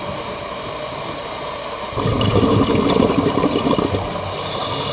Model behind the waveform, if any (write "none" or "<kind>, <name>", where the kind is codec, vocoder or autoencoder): none